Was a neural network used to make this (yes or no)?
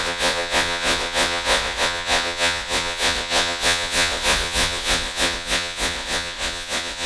yes